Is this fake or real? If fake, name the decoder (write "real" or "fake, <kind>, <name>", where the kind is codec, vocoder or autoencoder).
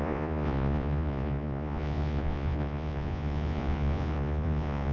fake, vocoder, Vocos